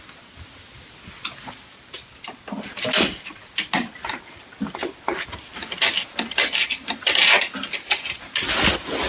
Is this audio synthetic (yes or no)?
no